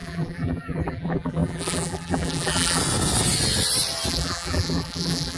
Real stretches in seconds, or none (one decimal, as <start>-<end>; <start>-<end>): 2.8-4.1